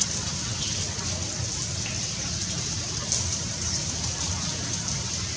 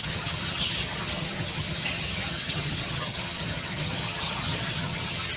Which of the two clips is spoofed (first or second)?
second